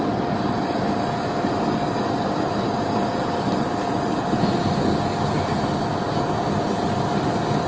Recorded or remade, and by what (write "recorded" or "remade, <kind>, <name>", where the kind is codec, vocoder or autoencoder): recorded